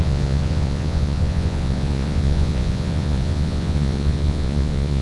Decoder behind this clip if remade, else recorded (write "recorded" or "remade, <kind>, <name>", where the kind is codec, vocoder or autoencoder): remade, vocoder, Vocos